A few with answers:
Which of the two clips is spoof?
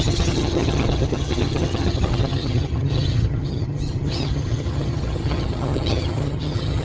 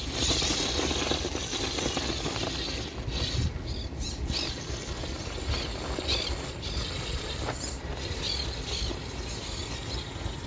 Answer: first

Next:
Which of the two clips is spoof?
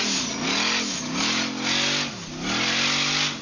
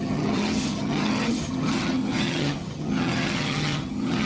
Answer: second